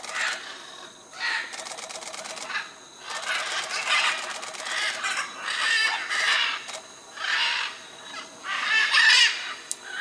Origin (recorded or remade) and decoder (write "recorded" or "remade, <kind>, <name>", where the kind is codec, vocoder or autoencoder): recorded